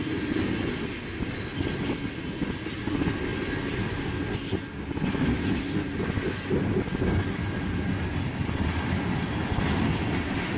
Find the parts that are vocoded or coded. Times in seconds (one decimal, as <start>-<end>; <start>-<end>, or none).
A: none